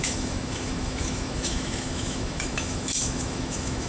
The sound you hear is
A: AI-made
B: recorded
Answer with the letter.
A